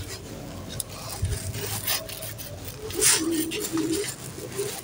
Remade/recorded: recorded